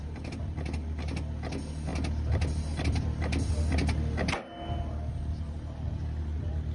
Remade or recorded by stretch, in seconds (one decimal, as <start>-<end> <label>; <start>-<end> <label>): 0.0-6.7 recorded